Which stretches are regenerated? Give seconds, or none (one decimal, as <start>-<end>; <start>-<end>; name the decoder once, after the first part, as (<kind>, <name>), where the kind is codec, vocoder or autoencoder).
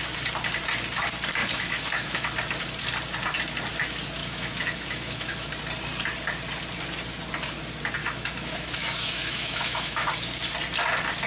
1.4-2.3 (autoencoder, DAC-VAE); 4.2-5.5; 8.0-10.1